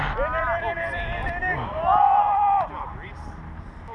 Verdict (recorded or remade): remade